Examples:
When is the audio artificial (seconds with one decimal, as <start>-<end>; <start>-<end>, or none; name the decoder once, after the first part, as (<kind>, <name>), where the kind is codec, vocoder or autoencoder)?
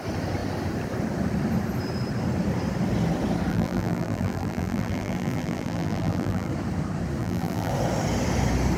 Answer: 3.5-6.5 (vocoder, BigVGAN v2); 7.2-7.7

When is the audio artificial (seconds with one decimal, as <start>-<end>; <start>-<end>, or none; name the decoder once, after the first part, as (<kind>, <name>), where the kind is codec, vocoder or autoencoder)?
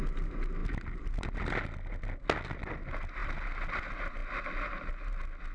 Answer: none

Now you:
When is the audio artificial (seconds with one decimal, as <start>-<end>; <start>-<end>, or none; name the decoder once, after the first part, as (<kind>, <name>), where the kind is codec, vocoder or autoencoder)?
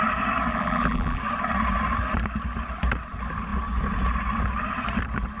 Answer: 0.5-1.2 (vocoder, BigVGAN v2)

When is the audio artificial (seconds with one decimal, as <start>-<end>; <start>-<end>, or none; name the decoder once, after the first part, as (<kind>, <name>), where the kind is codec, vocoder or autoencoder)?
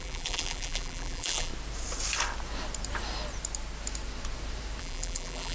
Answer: 0.0-1.5 (vocoder, BigVGAN v2); 4.8-5.5